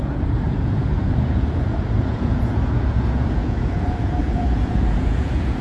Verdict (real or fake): fake